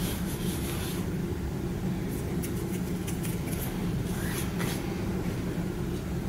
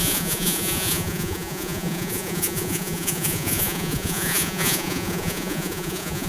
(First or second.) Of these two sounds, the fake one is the second